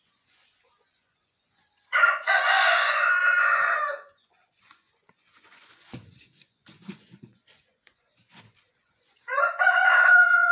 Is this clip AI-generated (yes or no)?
yes